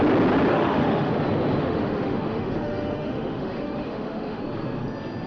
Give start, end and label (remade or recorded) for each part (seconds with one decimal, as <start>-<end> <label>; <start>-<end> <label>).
0.0-0.5 recorded; 0.5-1.1 remade; 1.1-1.6 recorded; 1.6-4.4 remade; 4.4-5.3 recorded